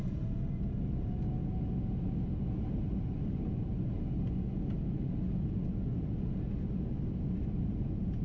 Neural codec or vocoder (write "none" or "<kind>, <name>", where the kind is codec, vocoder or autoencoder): none